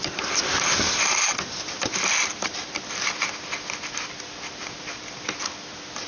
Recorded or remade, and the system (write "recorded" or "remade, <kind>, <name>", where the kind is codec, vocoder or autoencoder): recorded